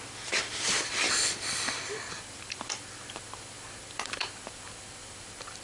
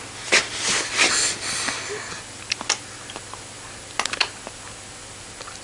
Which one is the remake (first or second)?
first